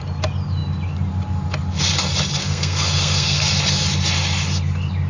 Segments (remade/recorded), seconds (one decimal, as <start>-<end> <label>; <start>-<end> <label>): 0.0-2.4 recorded; 2.4-3.4 remade; 3.4-5.1 recorded